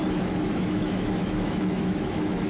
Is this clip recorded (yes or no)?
no